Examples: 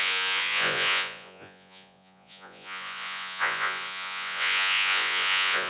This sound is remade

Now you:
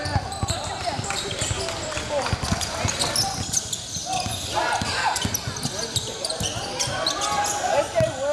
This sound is recorded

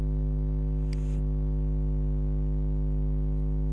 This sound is recorded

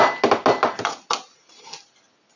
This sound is recorded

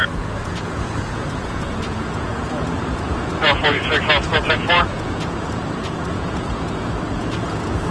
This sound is remade